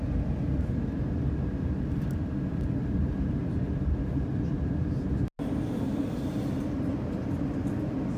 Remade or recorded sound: recorded